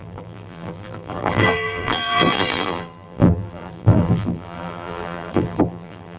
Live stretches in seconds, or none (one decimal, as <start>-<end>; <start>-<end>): none

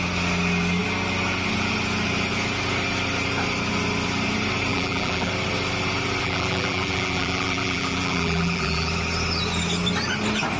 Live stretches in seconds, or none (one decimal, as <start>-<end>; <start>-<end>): 0.0-4.7; 5.3-6.2; 8.9-10.6

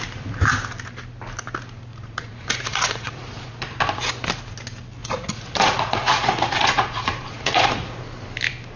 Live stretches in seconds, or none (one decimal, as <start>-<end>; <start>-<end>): 0.0-1.9; 3.8-5.0; 8.0-8.8

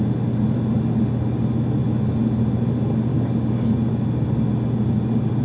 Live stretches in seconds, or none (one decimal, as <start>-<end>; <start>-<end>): 0.0-3.1; 3.7-5.4

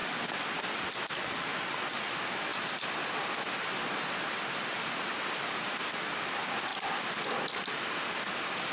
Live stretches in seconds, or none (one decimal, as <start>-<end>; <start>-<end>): 1.5-2.0

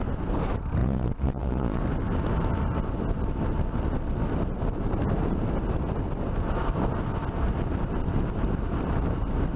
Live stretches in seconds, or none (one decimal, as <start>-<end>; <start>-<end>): 0.0-0.8; 1.8-9.6